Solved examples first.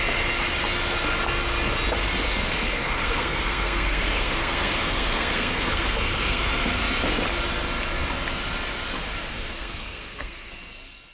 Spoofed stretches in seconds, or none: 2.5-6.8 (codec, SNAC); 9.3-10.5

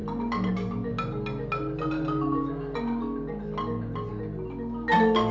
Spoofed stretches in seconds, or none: none

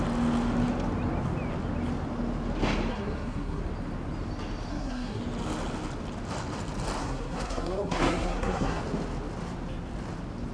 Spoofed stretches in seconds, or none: 2.9-3.6 (codec, SNAC); 4.7-5.2; 7.0-8.8

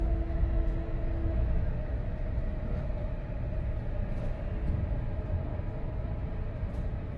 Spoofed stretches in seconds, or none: 1.2-2.9 (autoencoder, DAC-VAE); 5.5-6.1

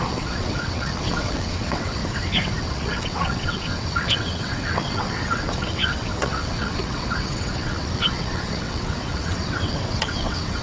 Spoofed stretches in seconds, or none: 0.0-2.0 (vocoder, WaveNeXt); 2.6-10.6

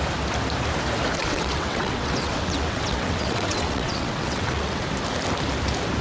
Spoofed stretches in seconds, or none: 1.2-4.8 (vocoder, WaveNeXt)

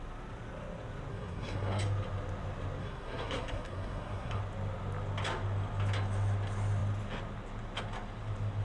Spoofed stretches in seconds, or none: 1.1-1.8 (codec, SNAC); 2.8-4.4